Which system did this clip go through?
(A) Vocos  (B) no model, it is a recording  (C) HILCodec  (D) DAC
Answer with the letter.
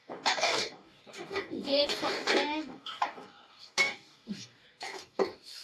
D